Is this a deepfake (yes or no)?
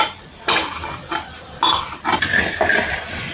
no